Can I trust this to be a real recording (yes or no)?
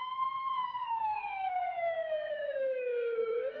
no